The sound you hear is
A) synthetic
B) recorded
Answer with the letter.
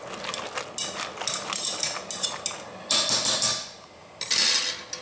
B